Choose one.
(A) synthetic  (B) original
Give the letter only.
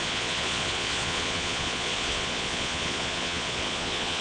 A